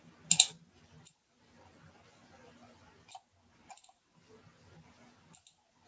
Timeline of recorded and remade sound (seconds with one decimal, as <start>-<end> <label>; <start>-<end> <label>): 0.0-5.9 recorded